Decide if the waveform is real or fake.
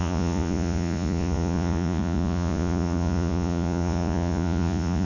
fake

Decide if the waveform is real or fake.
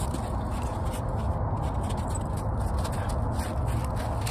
real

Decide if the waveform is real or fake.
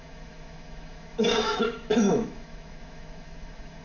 fake